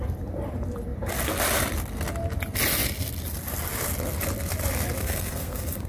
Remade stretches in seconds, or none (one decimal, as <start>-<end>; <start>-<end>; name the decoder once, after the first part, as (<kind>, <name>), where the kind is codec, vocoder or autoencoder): 5.0-5.9 (codec, SNAC)

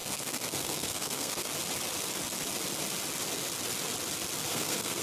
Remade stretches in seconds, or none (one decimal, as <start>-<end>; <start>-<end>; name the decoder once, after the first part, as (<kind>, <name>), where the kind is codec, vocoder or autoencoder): 0.0-1.5 (codec, SNAC); 4.5-5.0

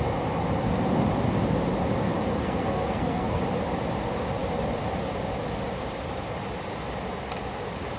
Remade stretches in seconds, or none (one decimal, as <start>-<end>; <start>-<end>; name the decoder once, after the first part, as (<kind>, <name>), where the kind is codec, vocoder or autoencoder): 2.4-3.4 (codec, SNAC)

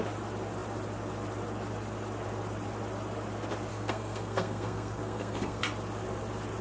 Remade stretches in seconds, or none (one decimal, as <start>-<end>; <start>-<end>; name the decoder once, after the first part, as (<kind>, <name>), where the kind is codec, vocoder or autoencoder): 3.7-5.6 (codec, SNAC)

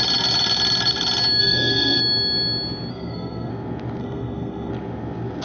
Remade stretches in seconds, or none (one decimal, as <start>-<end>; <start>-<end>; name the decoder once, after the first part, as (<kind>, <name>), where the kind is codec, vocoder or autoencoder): 1.4-2.0 (codec, SNAC); 2.9-3.5; 4.0-4.7

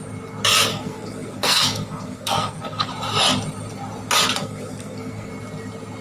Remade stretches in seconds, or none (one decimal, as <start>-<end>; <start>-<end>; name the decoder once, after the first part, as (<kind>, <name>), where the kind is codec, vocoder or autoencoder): 0.7-2.9 (codec, SNAC); 4.4-5.3

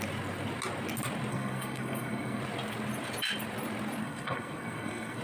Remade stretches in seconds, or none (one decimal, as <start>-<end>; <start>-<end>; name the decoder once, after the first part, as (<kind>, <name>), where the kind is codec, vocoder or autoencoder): 1.3-2.4 (codec, SNAC); 4.0-5.2

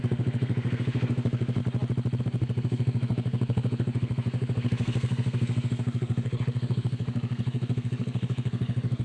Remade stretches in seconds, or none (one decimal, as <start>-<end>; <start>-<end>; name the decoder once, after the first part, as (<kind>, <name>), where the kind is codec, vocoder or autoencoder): 0.0-1.6 (codec, SNAC); 2.2-9.0